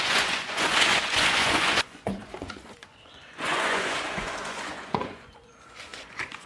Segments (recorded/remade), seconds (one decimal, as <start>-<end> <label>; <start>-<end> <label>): 0.0-6.5 remade